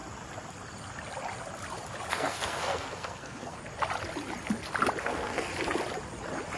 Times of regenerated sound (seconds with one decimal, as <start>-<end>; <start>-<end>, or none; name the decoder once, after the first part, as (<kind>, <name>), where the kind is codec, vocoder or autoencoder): 2.1-3.6 (codec, SNAC); 5.0-5.5